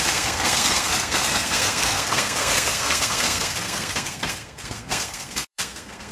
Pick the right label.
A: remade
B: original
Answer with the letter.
A